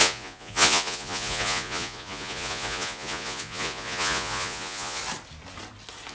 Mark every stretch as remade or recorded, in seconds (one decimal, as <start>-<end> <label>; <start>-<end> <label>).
0.0-5.0 remade; 5.0-6.1 recorded